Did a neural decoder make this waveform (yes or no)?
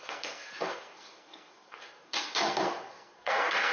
yes